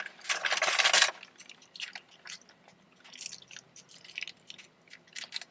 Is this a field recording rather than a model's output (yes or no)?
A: yes